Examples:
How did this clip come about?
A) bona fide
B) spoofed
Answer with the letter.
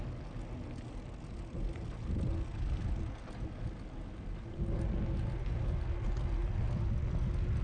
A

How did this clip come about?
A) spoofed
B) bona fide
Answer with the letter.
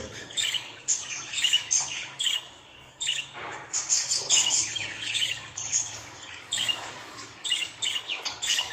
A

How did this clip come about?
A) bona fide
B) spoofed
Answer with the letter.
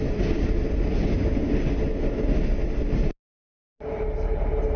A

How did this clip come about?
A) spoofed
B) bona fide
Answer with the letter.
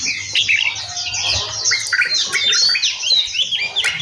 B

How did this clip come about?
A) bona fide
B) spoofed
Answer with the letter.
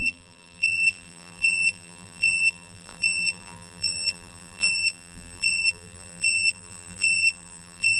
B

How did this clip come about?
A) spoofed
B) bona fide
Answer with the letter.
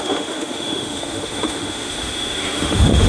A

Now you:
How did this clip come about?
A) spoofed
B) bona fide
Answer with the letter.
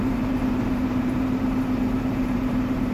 A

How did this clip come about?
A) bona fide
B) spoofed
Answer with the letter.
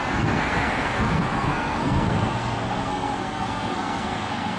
B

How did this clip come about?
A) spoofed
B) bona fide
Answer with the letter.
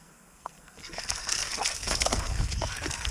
A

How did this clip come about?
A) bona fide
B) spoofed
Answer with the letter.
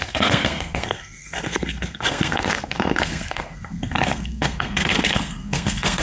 B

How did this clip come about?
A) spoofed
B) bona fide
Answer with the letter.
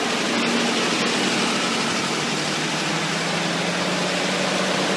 B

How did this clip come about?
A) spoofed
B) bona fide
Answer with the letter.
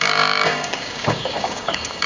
A